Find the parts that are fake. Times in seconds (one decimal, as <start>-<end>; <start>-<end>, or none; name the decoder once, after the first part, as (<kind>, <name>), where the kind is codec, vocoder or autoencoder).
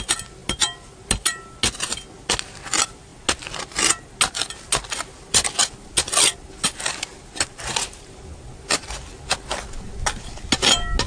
none